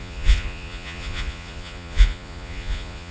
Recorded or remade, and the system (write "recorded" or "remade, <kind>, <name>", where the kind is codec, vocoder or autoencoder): remade, vocoder, Vocos